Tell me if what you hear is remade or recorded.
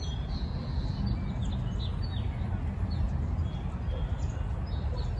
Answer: recorded